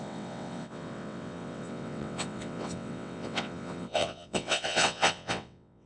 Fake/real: fake